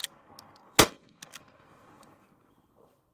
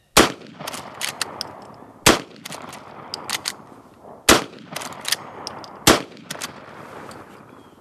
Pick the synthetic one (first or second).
first